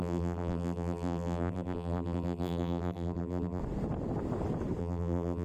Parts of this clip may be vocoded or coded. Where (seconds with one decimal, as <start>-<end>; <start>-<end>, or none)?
0.0-3.6; 4.8-5.4